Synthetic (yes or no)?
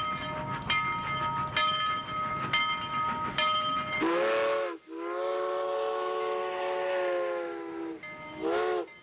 no